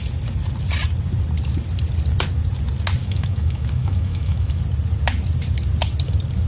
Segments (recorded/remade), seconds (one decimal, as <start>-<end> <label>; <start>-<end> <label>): 0.0-3.0 recorded; 3.0-4.6 remade; 4.6-6.5 recorded